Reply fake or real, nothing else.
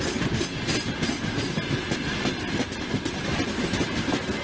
real